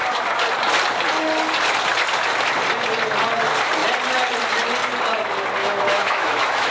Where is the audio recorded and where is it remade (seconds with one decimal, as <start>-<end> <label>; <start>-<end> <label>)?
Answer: 0.0-5.6 recorded; 5.6-6.7 remade